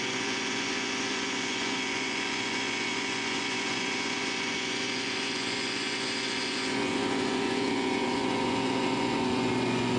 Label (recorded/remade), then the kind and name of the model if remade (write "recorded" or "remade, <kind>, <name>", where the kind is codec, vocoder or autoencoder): remade, vocoder, Vocos